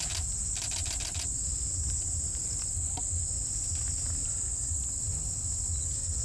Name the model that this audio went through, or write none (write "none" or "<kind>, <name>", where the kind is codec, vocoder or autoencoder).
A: none